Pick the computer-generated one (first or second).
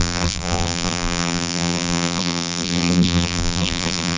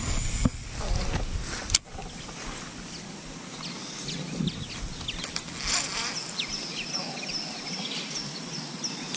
first